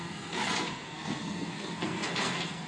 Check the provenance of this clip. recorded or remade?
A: remade